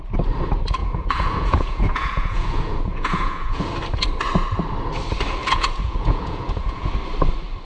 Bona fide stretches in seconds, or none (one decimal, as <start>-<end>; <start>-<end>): 0.0-0.8; 3.7-5.4; 6.9-7.6

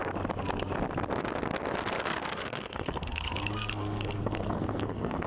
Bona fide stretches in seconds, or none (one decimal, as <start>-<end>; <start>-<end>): 0.0-2.0

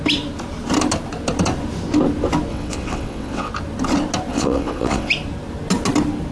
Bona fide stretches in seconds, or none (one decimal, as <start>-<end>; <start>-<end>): 0.0-2.5; 3.5-4.3; 5.1-6.3

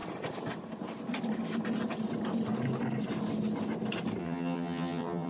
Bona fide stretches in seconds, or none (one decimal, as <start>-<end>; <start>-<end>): 0.0-4.2

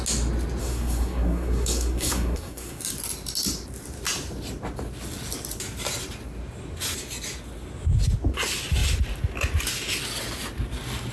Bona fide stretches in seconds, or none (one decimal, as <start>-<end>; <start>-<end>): 0.0-0.6; 2.8-11.1

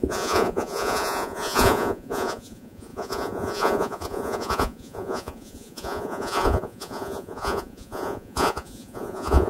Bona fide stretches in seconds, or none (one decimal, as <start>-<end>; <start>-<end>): none

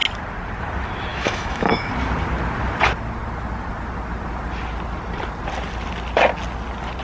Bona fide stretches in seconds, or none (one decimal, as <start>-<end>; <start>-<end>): 0.0-1.1; 1.9-7.0